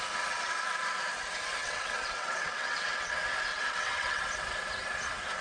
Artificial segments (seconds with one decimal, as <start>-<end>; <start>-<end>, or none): 1.6-3.1; 3.5-4.2

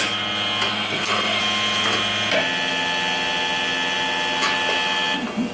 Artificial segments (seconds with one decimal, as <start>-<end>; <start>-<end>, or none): 0.7-1.4

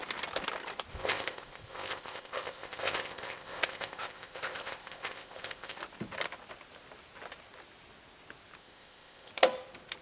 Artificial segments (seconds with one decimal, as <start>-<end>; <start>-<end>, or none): 0.9-5.8; 8.6-9.3

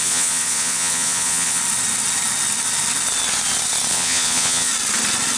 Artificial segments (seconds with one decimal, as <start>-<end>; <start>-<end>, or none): 0.0-1.6; 3.9-4.7

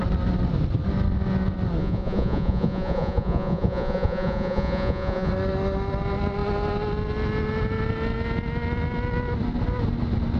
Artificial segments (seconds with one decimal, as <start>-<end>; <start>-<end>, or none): 1.8-5.3

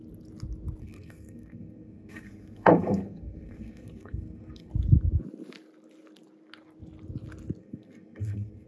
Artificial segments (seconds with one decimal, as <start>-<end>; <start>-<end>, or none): 0.8-4.7; 7.6-8.7

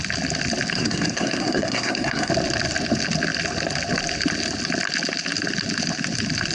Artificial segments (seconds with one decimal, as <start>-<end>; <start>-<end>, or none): 0.7-2.3